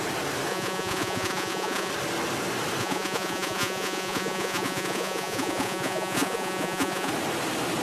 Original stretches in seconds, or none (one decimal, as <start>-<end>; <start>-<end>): 0.0-0.5; 1.9-2.8; 7.1-7.8